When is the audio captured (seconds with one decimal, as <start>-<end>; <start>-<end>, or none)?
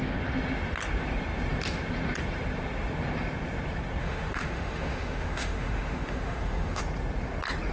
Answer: 0.0-4.0; 6.8-7.7